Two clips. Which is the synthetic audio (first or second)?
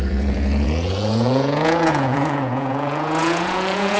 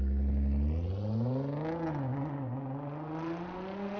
first